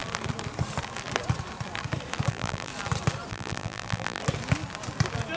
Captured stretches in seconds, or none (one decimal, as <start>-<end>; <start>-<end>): 0.0-2.3; 2.7-3.3; 4.2-5.4